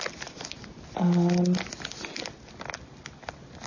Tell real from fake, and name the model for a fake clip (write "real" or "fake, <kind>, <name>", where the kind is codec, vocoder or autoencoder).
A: real